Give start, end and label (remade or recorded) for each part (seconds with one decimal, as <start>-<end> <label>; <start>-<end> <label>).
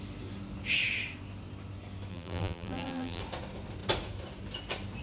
0.0-2.1 recorded; 2.1-3.2 remade; 3.2-5.0 recorded